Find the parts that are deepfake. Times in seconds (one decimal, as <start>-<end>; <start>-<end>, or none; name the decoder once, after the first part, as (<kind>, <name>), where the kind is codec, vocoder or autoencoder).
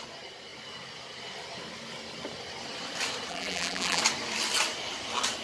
3.3-4.0 (vocoder, BigVGAN v2)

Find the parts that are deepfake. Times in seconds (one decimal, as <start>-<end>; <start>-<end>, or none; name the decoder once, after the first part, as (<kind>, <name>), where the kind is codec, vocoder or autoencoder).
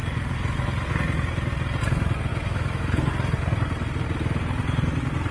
2.3-3.1 (autoencoder, DAC-VAE)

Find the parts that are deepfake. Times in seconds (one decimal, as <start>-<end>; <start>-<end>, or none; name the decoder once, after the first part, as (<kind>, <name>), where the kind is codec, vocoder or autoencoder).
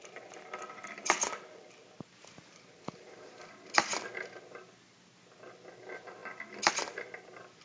0.0-3.9 (vocoder, BigVGAN v2); 5.5-7.6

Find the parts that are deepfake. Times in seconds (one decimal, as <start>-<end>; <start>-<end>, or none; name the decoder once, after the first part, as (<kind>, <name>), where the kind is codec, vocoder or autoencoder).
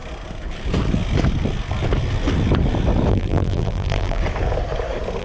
3.1-4.2 (vocoder, BigVGAN v2)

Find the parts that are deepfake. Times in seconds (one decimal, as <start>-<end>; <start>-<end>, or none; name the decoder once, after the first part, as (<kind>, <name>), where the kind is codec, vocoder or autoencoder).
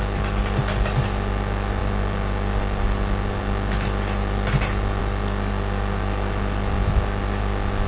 none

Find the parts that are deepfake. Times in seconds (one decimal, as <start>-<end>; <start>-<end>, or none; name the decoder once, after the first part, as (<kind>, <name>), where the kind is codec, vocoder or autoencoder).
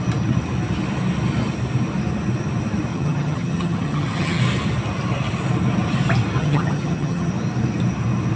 2.9-4.4 (vocoder, HiFi-GAN); 6.4-7.3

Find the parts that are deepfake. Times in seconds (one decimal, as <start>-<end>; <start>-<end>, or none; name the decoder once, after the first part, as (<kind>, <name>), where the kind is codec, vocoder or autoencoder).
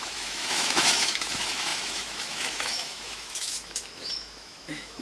0.0-5.0 (autoencoder, DAC-VAE)